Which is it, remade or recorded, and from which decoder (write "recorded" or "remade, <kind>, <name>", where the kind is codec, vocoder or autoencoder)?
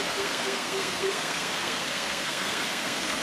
remade, codec, SNAC